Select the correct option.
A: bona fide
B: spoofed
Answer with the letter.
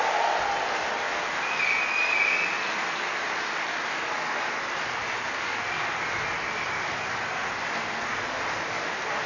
A